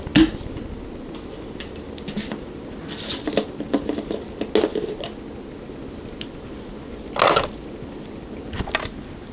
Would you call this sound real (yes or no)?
yes